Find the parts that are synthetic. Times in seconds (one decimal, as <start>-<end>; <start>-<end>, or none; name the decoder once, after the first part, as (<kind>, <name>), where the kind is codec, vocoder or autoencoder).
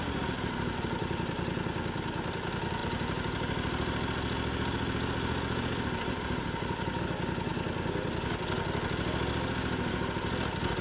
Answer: none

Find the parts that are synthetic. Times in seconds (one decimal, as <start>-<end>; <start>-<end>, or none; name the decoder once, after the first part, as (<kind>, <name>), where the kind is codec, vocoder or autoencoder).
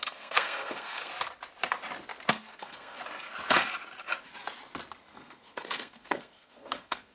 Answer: 0.0-1.1 (codec, SNAC); 2.3-3.0; 5.1-7.1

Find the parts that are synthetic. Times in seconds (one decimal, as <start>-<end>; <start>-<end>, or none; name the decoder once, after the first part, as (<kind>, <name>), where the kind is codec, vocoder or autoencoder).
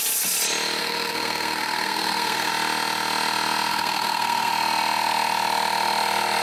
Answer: 0.8-2.5 (codec, SNAC); 3.7-4.5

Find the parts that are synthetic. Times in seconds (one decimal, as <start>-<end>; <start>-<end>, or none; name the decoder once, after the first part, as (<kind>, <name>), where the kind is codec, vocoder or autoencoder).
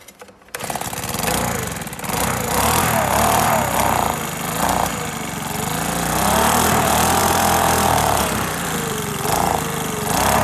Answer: 7.2-9.1 (vocoder, BigVGAN v2)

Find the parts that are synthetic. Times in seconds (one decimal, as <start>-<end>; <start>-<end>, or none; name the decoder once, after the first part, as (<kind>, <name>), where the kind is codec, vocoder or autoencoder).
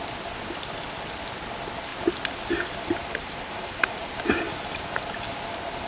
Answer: 3.0-4.6 (vocoder, BigVGAN v2)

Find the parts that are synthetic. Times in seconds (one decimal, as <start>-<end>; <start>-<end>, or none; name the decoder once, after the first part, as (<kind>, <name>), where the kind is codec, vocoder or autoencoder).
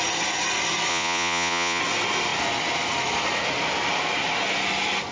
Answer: 0.9-1.8 (vocoder, Vocos)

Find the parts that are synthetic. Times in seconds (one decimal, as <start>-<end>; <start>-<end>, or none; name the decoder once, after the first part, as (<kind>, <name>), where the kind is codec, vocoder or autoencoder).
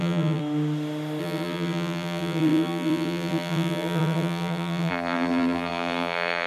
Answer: 0.0-0.4 (vocoder, BigVGAN v2); 1.2-6.5